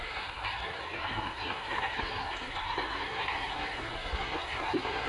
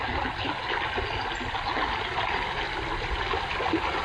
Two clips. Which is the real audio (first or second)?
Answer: second